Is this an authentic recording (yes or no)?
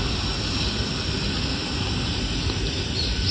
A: yes